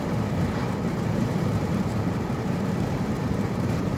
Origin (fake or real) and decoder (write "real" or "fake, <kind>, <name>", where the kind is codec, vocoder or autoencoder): fake, vocoder, BigVGAN v2